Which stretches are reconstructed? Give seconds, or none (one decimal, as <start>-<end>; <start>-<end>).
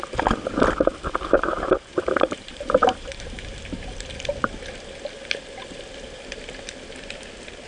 1.9-3.3